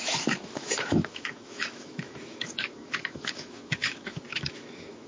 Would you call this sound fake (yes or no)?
yes